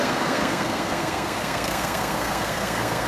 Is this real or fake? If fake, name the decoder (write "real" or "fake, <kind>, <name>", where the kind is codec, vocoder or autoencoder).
fake, codec, SNAC